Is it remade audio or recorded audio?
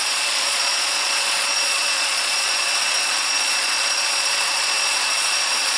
remade